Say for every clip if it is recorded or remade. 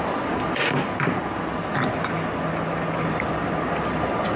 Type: recorded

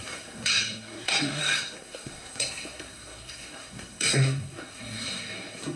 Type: remade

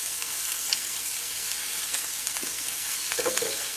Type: remade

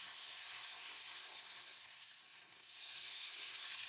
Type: remade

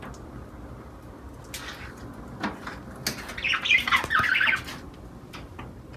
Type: recorded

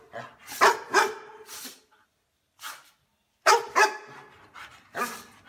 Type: recorded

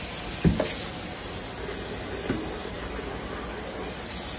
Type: recorded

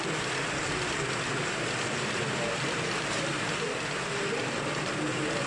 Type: recorded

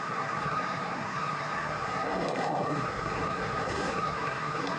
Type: remade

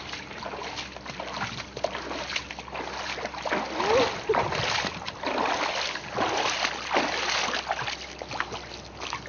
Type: recorded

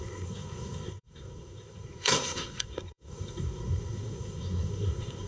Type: remade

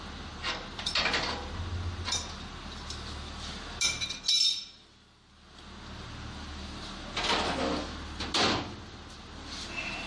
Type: recorded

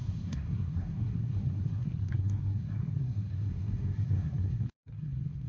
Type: remade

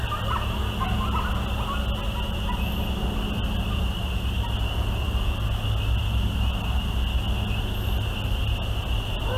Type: recorded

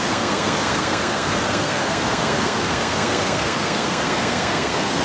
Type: remade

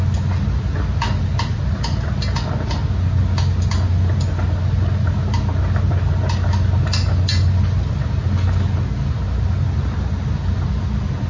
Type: recorded